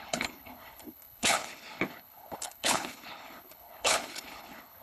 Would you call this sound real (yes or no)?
no